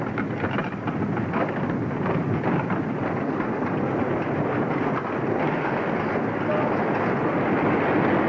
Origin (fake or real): real